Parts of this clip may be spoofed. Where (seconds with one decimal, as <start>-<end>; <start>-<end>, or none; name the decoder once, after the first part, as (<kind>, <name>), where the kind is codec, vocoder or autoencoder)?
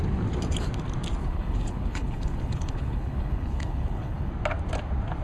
1.2-4.3 (codec, HILCodec)